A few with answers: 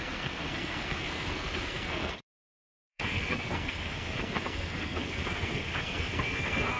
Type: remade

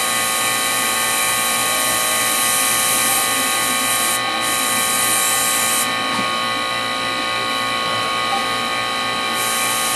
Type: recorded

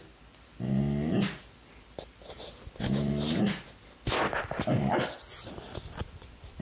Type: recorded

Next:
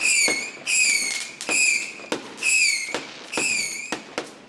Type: recorded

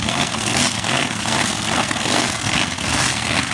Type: remade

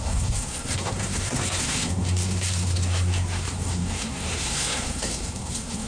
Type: remade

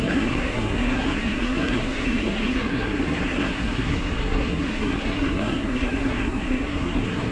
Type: remade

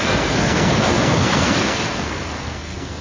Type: remade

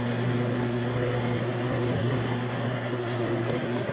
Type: remade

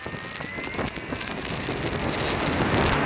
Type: recorded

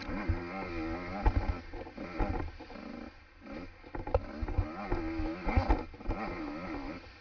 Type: recorded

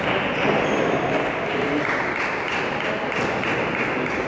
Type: recorded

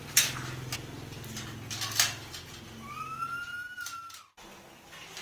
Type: recorded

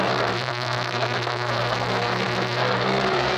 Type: remade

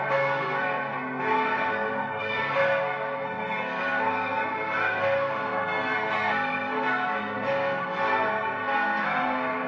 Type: remade